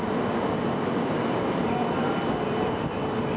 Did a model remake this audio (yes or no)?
no